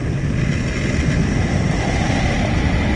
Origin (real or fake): real